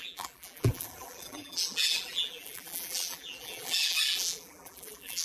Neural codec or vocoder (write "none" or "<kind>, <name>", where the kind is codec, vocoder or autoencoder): vocoder, BigVGAN v2